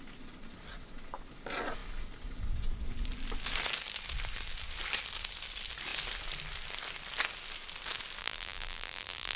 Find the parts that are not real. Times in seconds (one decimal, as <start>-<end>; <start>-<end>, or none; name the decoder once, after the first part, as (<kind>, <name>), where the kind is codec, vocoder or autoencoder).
8.2-9.4 (vocoder, BigVGAN v2)